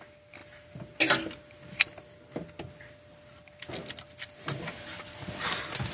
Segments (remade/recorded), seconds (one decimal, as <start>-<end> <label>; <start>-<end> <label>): 0.0-5.9 recorded